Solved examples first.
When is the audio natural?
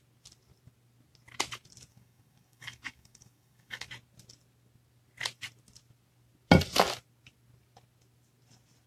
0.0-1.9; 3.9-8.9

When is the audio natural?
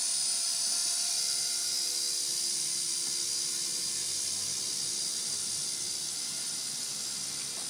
0.0-7.7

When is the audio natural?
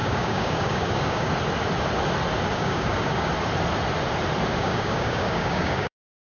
1.3-2.5; 3.3-4.5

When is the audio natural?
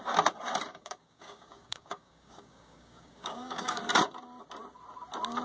0.0-0.7; 3.8-5.4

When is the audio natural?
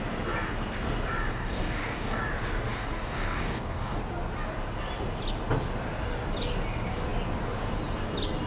0.0-1.3; 2.2-2.7; 4.0-8.5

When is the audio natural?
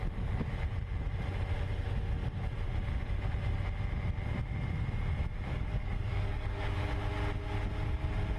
0.0-5.5; 6.9-8.4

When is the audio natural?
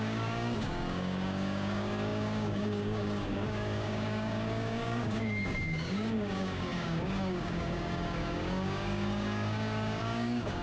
none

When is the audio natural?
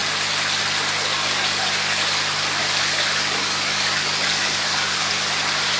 0.0-1.1; 1.6-2.6; 5.1-5.8